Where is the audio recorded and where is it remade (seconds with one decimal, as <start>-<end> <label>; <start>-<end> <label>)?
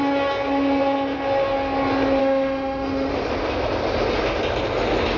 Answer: 0.0-2.2 recorded; 2.2-3.1 remade; 3.1-5.2 recorded